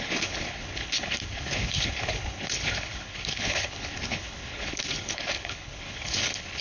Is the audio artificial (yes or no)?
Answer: yes